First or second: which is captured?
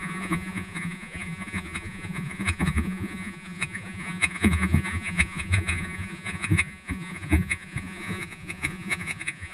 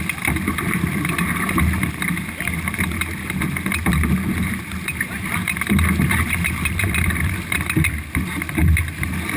second